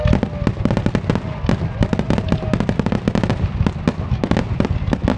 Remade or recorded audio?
recorded